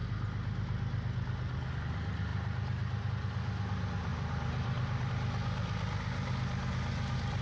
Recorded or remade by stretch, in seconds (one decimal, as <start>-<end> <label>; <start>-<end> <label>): 0.0-4.1 recorded; 4.1-5.1 remade; 5.1-7.4 recorded